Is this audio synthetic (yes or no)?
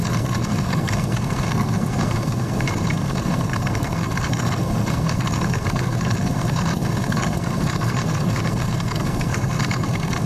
yes